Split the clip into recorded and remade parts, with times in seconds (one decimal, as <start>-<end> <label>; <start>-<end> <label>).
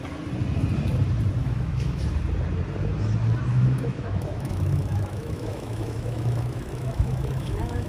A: 0.0-1.4 recorded; 1.4-2.0 remade; 2.0-3.5 recorded; 3.5-7.9 remade